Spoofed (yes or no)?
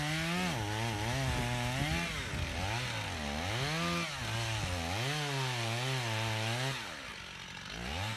no